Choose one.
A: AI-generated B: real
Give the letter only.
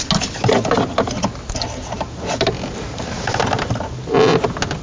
B